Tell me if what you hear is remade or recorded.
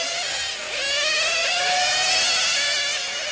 recorded